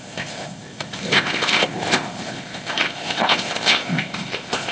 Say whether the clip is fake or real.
fake